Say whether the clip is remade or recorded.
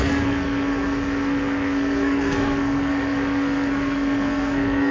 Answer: remade